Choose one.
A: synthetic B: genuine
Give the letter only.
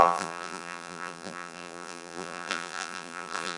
A